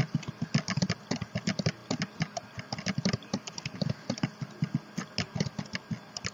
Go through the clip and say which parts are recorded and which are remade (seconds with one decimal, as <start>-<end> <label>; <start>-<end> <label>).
0.0-6.3 recorded